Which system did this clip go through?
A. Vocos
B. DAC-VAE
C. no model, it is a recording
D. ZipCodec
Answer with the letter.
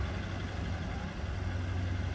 C